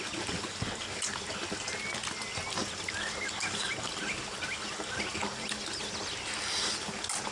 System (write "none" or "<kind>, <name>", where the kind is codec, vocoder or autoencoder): none